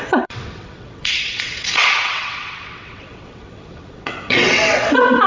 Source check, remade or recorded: remade